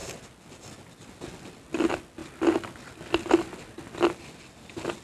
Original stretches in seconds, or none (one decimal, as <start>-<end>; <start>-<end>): 0.0-5.0